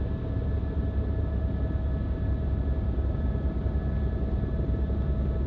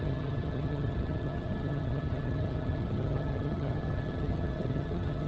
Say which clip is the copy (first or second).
second